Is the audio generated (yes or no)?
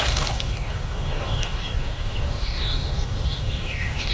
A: yes